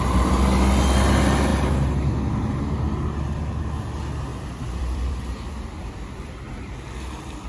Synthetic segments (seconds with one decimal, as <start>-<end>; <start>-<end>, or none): 4.3-6.4

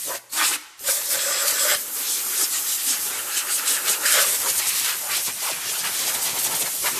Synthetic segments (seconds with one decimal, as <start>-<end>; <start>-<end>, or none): 0.6-2.4; 3.0-5.4

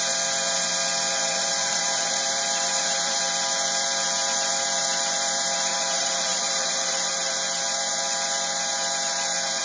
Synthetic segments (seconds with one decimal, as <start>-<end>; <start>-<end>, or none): 1.2-3.2; 5.7-7.3

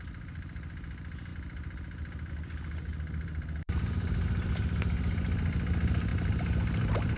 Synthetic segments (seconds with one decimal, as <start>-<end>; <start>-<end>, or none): 2.9-4.5; 6.1-7.2

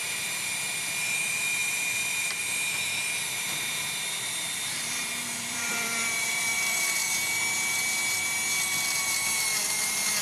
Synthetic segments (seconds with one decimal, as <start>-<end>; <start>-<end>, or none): 0.0-7.0

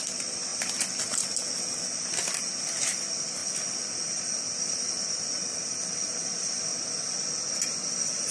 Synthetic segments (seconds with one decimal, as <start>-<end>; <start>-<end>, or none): 0.0-0.5; 2.6-3.4; 5.0-6.7; 7.8-8.3

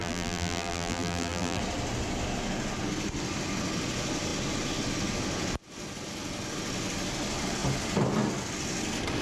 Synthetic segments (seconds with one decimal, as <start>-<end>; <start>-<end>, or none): 0.0-1.6

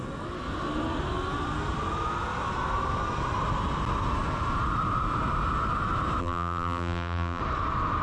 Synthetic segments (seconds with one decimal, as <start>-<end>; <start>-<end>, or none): 6.2-7.4